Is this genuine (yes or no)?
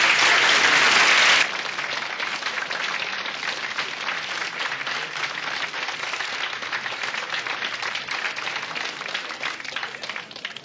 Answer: yes